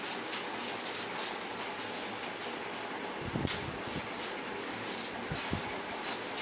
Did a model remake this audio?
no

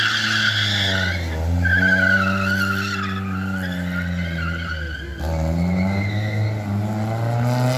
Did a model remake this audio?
no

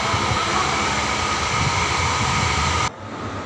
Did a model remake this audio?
no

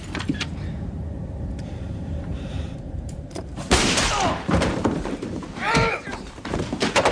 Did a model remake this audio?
yes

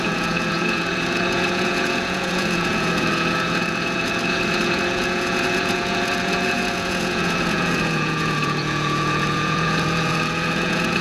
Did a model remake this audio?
yes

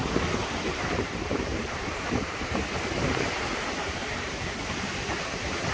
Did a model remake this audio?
yes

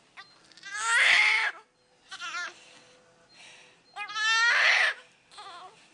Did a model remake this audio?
no